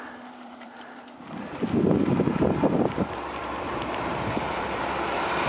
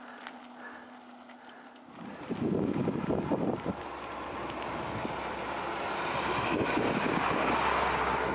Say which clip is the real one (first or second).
second